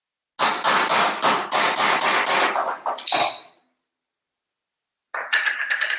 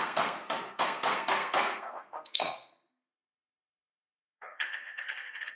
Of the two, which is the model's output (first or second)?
second